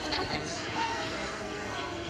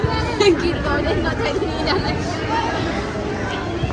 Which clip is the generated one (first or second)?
first